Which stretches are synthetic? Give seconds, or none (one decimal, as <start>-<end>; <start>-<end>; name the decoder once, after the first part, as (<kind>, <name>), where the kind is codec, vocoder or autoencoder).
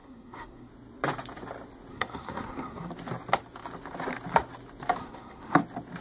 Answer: 0.0-0.7 (codec, SNAC); 1.9-2.9; 5.0-5.6